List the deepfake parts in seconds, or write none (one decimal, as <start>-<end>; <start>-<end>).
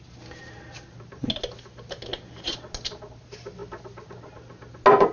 none